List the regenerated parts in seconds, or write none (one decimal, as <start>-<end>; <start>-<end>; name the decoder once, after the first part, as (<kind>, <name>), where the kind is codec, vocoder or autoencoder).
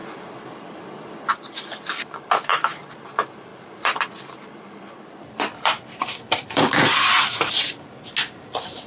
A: 0.0-1.3 (vocoder, BigVGAN v2); 2.5-3.1; 3.5-6.7